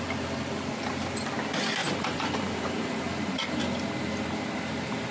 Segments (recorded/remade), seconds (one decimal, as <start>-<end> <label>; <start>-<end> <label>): 0.0-1.8 recorded; 1.8-3.6 remade; 3.6-5.1 recorded